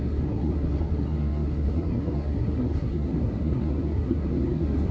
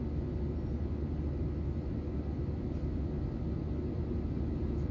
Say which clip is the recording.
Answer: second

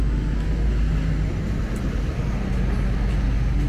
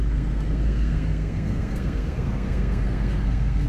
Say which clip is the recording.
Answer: first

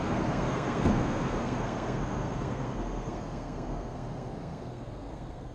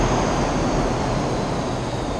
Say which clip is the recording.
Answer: second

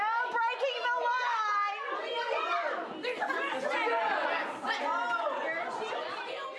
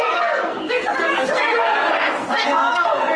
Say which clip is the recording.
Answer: first